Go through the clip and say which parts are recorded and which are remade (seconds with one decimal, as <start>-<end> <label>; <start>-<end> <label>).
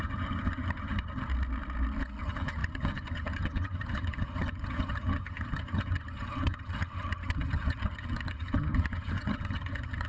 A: 0.0-1.3 remade; 1.3-2.2 recorded; 2.2-10.1 remade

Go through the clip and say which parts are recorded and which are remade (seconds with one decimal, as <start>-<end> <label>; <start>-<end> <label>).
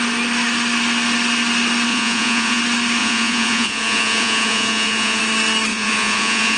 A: 0.0-1.9 recorded; 1.9-2.6 remade; 2.6-3.0 recorded; 3.0-5.2 remade; 5.2-5.7 recorded; 5.7-6.6 remade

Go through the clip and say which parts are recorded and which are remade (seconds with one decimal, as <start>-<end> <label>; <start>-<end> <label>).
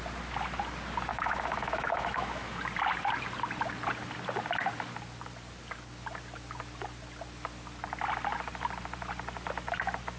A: 0.0-1.1 recorded; 1.1-2.6 remade; 2.6-10.2 recorded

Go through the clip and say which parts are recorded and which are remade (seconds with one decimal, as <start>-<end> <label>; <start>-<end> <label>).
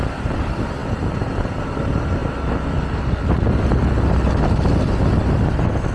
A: 0.0-5.9 recorded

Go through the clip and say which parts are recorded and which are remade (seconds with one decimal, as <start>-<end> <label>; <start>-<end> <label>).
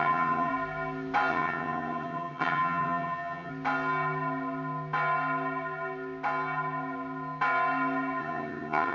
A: 0.0-0.5 remade; 0.5-1.3 recorded; 1.3-3.5 remade; 3.5-8.2 recorded; 8.2-8.9 remade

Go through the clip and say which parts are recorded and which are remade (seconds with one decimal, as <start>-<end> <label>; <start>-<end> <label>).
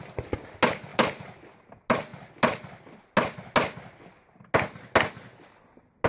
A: 0.0-0.9 recorded; 0.9-1.5 remade; 1.5-6.1 recorded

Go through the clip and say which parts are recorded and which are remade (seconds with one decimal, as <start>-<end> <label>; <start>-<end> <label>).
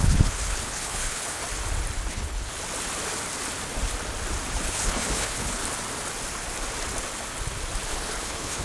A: 0.0-1.4 remade; 1.4-2.1 recorded; 2.1-2.5 remade; 2.5-4.6 recorded; 4.6-5.6 remade; 5.6-8.0 recorded; 8.0-8.6 remade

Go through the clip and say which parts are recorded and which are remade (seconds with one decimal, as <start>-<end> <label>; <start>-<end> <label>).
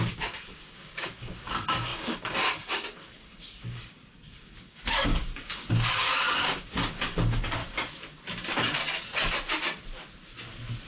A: 0.0-7.6 remade; 7.6-10.9 recorded